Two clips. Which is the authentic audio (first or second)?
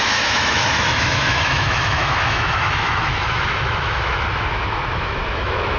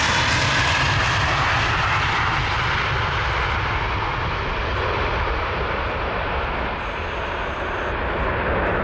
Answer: second